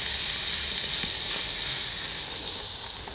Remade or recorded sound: recorded